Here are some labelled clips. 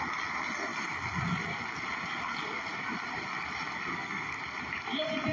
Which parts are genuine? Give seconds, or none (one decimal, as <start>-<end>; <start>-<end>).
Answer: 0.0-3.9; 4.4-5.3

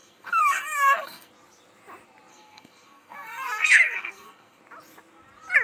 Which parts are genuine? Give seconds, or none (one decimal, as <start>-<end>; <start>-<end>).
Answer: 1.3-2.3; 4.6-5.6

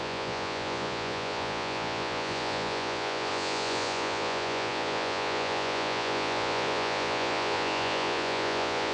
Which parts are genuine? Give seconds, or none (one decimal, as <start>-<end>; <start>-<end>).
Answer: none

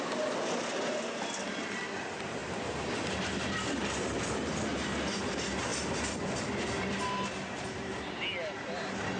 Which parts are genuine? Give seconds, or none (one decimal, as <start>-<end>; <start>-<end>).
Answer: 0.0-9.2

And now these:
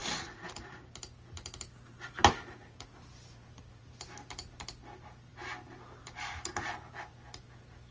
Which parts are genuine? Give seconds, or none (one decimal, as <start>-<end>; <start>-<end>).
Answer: 0.9-2.6; 3.8-7.9

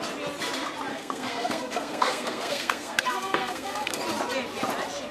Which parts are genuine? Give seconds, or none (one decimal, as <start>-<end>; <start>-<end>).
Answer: 0.0-0.9; 4.0-5.1